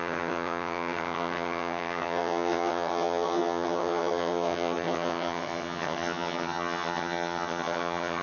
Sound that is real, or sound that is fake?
fake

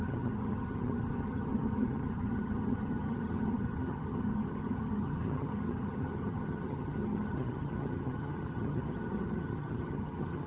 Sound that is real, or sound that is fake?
fake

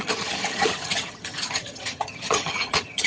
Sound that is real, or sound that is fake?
fake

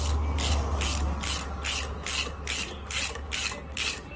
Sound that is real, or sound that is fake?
real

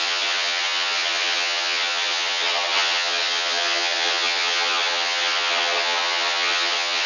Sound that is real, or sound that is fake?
fake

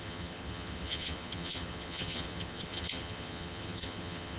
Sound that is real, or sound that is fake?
fake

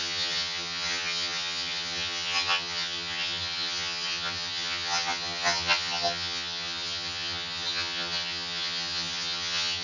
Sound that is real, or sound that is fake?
fake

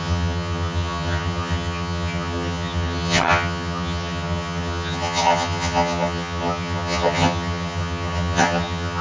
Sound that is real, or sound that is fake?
fake